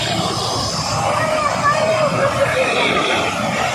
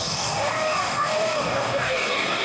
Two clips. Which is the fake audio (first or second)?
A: second